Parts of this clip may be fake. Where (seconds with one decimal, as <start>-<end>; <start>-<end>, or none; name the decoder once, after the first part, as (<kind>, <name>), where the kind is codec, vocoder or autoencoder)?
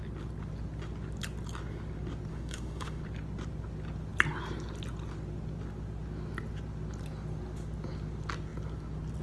2.3-3.0 (autoencoder, DAC-VAE)